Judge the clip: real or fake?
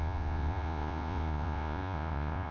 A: fake